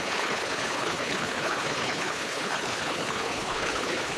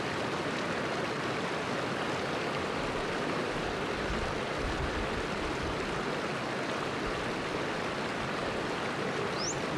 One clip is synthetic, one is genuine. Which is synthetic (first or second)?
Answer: first